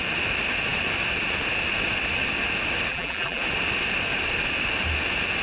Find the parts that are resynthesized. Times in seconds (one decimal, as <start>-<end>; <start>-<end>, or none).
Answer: 2.9-3.4